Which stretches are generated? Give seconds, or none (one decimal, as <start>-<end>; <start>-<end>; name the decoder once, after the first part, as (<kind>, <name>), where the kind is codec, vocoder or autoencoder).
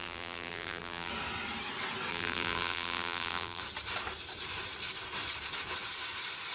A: 0.0-1.1 (vocoder, BigVGAN v2); 2.1-3.6